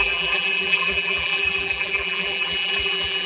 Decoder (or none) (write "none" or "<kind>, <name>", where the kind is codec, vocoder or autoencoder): vocoder, BigVGAN v2